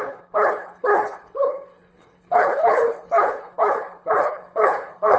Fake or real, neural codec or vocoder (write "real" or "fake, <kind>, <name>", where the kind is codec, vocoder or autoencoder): fake, codec, HILCodec